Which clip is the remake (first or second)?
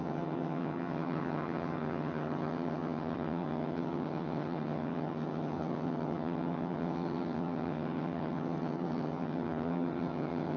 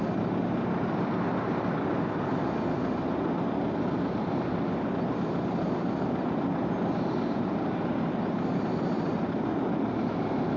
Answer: first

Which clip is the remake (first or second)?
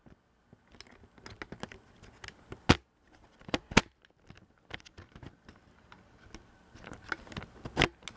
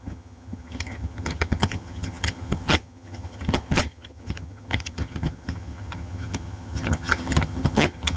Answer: second